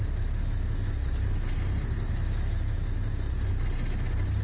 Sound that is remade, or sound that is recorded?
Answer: recorded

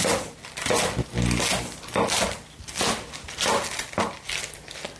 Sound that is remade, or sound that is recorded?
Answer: recorded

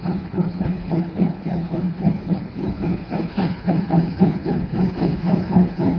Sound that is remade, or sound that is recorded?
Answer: remade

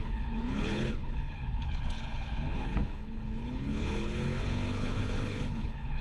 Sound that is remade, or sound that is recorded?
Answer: remade